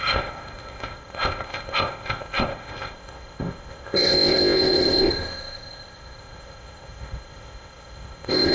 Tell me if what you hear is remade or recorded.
remade